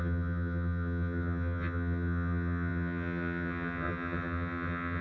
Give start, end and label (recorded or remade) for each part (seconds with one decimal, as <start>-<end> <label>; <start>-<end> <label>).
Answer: 0.0-5.0 remade